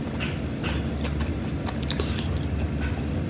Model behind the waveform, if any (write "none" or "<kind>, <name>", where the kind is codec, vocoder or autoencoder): none